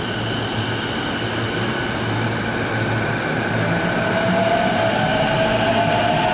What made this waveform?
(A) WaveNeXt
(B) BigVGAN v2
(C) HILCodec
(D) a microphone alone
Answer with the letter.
D